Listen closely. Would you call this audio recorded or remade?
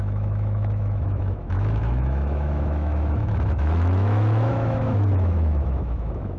remade